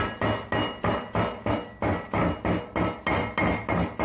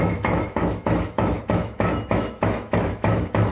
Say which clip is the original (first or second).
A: first